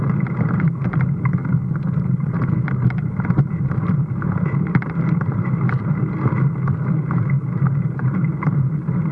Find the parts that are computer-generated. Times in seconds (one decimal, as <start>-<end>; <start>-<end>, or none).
0.0-1.4; 2.1-6.0; 7.0-9.1